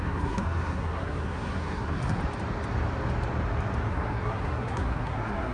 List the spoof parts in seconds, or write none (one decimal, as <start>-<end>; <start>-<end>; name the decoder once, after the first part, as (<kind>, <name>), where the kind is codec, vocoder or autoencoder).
0.0-2.2 (codec, SNAC); 3.9-5.5